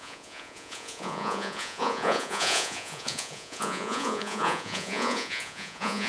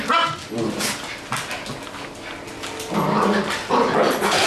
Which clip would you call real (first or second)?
second